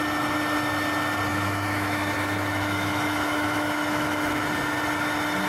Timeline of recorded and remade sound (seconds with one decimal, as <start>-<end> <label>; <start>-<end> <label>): 0.0-1.3 recorded; 1.3-4.5 remade; 4.5-5.5 recorded